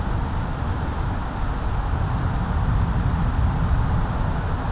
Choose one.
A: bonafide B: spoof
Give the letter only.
A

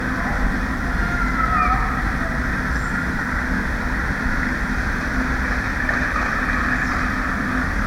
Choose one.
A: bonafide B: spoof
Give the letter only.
A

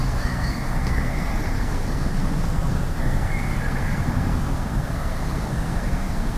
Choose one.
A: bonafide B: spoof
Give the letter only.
B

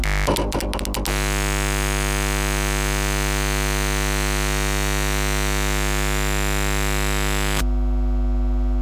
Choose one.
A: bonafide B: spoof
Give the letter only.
A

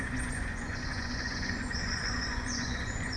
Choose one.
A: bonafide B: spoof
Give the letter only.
B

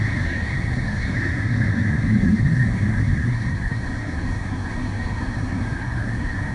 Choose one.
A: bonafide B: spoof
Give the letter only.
B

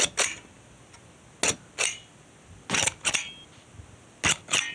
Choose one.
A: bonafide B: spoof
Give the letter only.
A